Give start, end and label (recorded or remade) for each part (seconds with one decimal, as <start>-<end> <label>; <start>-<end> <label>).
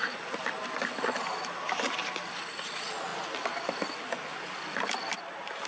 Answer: 0.0-5.7 recorded